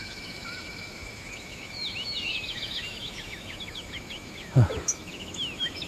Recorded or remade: remade